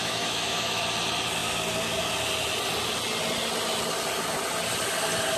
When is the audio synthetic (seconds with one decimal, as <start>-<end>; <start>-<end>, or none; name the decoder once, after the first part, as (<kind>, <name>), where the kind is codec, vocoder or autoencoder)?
0.0-0.8 (autoencoder, DAC-VAE)